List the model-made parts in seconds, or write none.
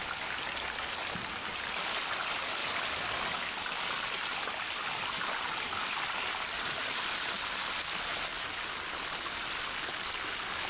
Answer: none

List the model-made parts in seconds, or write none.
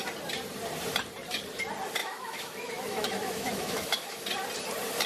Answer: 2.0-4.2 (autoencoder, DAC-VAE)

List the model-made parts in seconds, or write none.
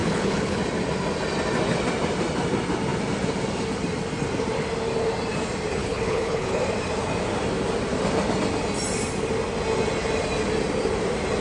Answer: 0.0-0.6 (codec, HILCodec); 5.8-6.6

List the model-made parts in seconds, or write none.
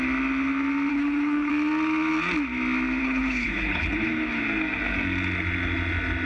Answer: 0.9-1.5 (codec, HILCodec); 3.0-4.4